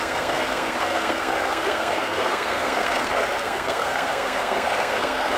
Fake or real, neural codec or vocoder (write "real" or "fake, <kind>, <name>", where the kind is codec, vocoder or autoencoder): fake, codec, SNAC